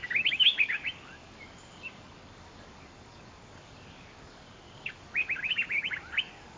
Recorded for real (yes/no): no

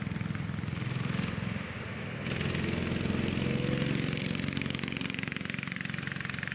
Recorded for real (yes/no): yes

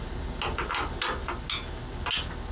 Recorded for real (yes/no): yes